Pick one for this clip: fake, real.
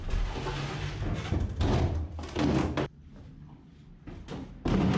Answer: real